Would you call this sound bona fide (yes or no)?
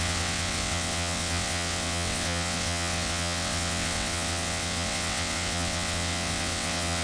no